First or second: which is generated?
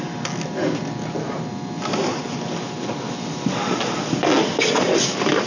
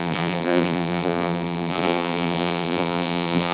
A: second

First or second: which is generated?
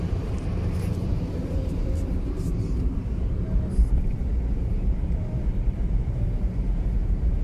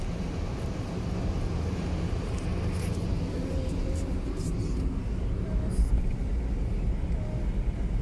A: first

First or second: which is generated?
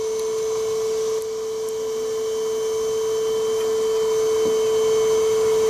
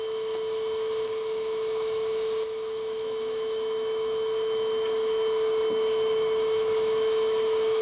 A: second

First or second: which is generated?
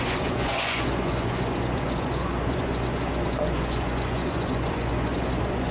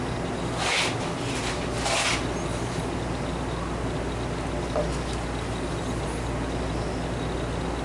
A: first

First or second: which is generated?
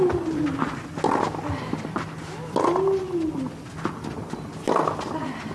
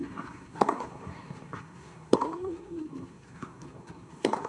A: second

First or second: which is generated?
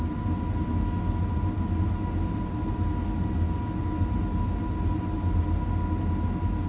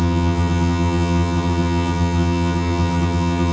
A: second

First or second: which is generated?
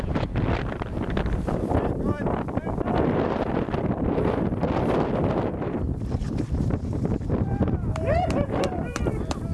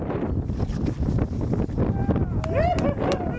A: first